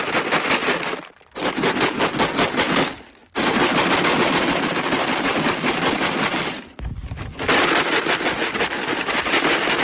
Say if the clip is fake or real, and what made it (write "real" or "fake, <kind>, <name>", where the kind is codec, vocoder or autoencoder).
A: real